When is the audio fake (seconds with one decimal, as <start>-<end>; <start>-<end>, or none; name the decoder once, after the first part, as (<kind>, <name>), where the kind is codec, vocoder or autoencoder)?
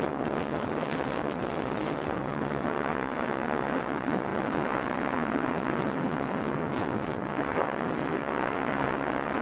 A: 0.0-9.4 (vocoder, WaveNeXt)